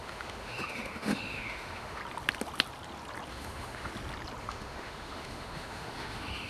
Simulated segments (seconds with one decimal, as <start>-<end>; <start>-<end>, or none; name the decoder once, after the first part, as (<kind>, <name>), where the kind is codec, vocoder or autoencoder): 0.0-2.0 (autoencoder, DAC-VAE); 3.3-3.9; 4.4-6.5